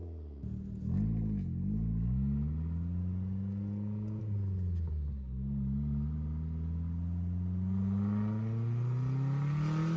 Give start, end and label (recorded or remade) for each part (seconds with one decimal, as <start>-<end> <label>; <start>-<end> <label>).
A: 0.0-10.0 recorded